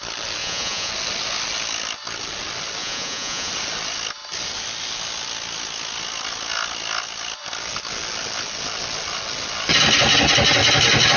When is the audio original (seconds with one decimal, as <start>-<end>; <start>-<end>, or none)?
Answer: 0.0-0.4; 0.9-2.8; 3.5-11.2

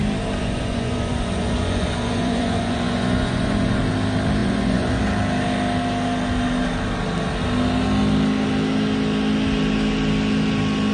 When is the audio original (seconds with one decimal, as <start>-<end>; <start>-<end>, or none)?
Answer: 0.0-0.4; 3.8-4.4; 5.0-10.9

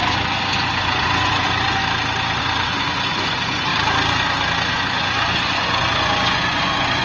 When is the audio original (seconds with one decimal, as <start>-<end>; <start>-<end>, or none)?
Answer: 1.8-2.4; 3.7-4.7

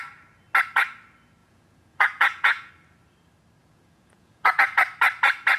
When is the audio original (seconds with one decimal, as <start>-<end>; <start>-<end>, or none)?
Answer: 0.0-1.4; 2.7-3.6; 4.8-5.6